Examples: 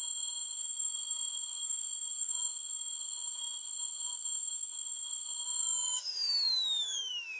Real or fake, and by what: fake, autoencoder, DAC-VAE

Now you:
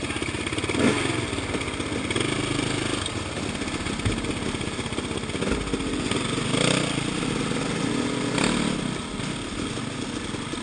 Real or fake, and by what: real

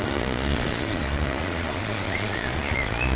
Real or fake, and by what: fake, vocoder, Vocos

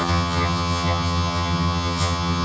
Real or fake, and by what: fake, vocoder, HiFi-GAN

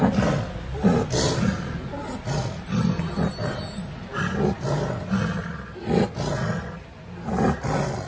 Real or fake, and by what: real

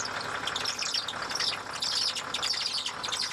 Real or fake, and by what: real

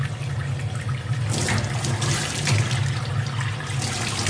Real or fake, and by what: real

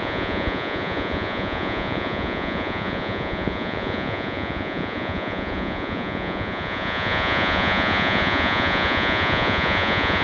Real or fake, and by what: fake, vocoder, Vocos